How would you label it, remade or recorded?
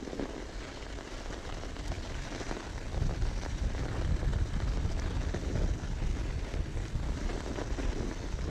recorded